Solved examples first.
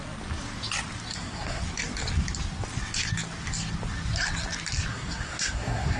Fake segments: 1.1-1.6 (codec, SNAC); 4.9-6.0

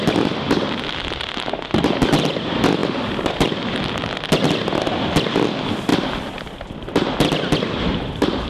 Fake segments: none

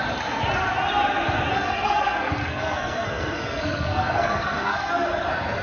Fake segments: 1.5-4.9 (codec, SNAC)

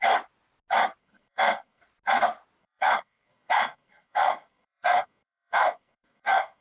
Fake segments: 1.0-1.8 (codec, SNAC); 2.6-6.6

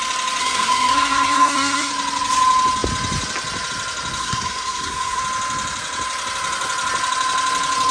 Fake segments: 0.4-1.9 (codec, SNAC); 4.2-5.2

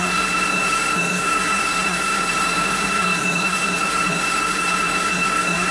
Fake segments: 0.0-5.7 (codec, SNAC)